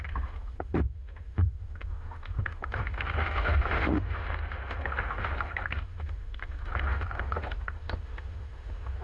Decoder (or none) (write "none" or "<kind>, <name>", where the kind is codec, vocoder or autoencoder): autoencoder, DAC-VAE